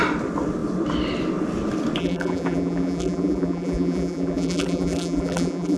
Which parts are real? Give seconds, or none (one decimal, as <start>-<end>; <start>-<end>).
0.0-2.0